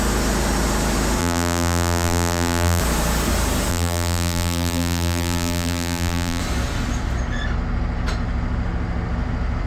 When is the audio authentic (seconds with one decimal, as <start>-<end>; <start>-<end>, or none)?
0.0-1.2; 2.8-3.7; 6.4-9.7